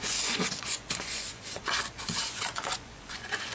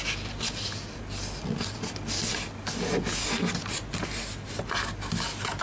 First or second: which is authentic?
second